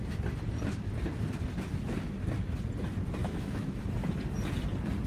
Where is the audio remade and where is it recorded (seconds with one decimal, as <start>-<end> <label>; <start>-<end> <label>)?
0.0-3.2 recorded; 3.2-3.8 remade; 3.8-5.1 recorded